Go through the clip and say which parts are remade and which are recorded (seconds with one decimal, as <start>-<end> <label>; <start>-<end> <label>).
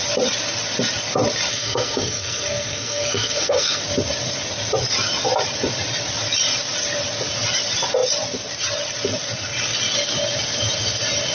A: 0.0-1.5 recorded; 1.5-3.8 remade; 3.8-11.3 recorded